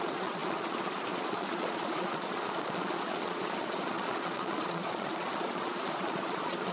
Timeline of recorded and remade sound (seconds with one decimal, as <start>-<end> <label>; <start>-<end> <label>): 0.0-6.7 remade